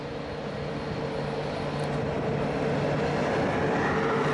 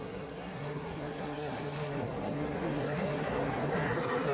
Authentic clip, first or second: first